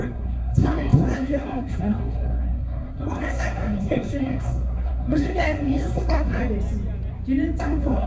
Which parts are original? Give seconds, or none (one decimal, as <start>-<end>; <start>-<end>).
6.4-7.6